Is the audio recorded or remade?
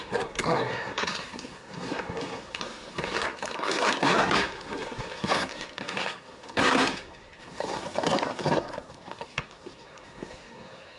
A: remade